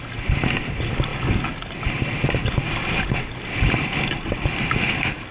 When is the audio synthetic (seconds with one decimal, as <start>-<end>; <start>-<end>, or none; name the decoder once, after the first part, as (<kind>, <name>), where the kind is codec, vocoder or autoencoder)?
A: none